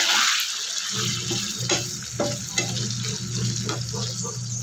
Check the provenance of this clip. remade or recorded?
recorded